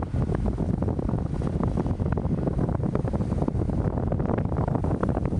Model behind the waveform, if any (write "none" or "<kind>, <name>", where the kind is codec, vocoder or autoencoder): none